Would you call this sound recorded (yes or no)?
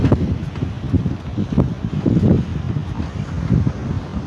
yes